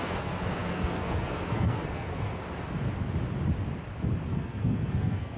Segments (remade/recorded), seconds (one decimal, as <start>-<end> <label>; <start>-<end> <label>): 0.0-2.4 remade; 2.4-4.3 recorded; 4.3-5.4 remade